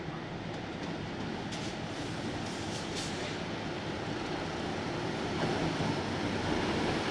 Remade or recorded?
recorded